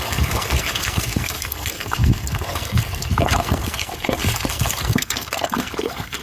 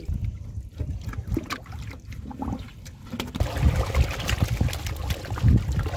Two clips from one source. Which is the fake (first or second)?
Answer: first